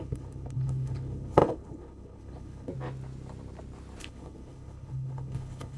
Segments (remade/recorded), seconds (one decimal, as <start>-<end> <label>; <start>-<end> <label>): 0.0-2.7 remade; 2.7-4.0 recorded; 4.0-5.8 remade